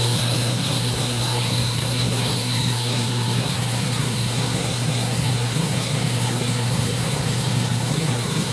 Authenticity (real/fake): fake